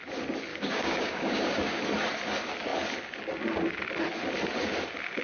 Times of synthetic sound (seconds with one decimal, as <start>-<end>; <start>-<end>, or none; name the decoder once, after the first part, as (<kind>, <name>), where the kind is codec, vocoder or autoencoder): 0.5-1.8 (codec, DAC)